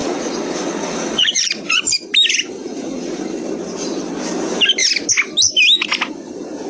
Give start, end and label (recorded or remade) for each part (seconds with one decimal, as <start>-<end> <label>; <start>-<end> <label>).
0.0-2.0 remade; 2.0-2.6 recorded; 2.6-3.2 remade; 3.2-6.7 recorded